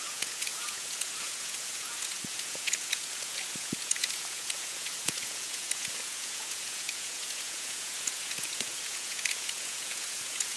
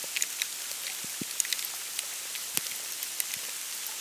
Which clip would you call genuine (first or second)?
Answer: second